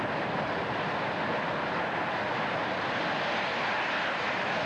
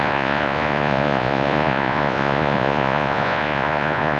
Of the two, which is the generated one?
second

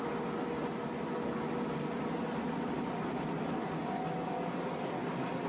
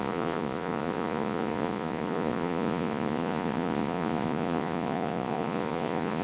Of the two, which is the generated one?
second